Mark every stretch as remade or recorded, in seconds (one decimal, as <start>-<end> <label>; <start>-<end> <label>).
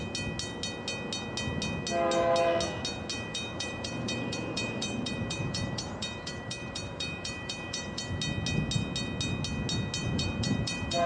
0.0-3.1 recorded; 3.1-8.0 remade; 8.0-10.0 recorded; 10.0-11.1 remade